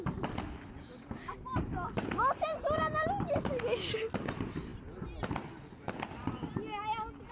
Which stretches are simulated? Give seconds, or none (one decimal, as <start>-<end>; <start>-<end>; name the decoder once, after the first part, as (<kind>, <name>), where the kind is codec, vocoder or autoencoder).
none